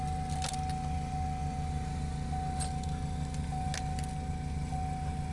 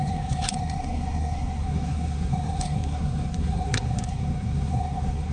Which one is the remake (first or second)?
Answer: second